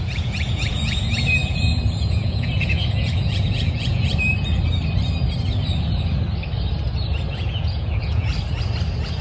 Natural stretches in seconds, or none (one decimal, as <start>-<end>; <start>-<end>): 4.1-7.3; 8.3-9.2